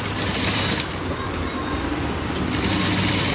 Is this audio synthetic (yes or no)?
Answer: no